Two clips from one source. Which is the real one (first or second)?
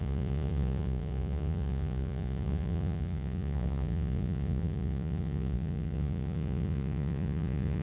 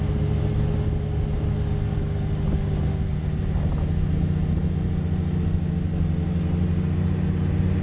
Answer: second